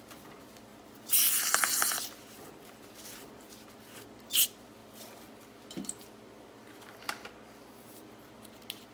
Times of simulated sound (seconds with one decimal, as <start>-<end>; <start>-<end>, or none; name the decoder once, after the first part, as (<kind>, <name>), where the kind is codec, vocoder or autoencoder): none